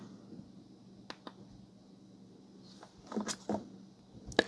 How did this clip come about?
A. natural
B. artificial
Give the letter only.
A